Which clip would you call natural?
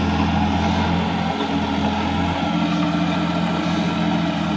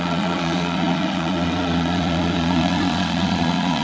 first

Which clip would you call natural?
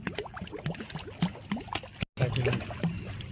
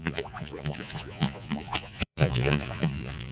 first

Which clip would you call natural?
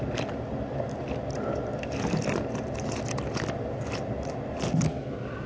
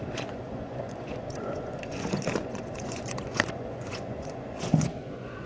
first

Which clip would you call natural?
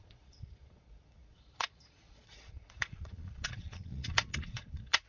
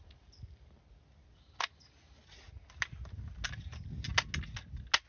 second